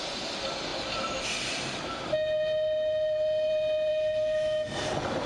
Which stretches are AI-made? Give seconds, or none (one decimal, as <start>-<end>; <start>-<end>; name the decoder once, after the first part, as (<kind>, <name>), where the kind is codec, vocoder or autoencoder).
3.9-4.8 (autoencoder, DAC-VAE)